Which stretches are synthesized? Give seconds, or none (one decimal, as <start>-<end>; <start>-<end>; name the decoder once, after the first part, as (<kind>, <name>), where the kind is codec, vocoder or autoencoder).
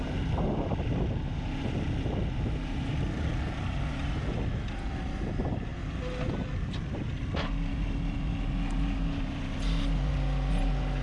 none